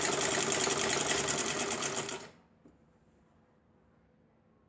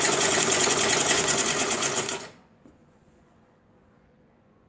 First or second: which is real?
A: first